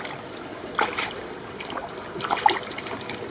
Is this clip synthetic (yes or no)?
no